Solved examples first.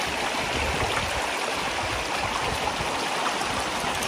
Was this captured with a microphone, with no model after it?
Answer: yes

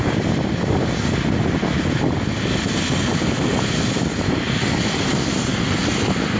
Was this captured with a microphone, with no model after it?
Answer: yes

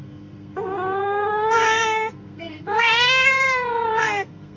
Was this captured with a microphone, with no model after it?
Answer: no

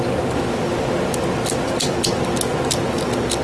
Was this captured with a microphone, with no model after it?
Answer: yes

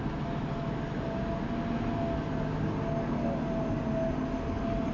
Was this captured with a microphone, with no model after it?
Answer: yes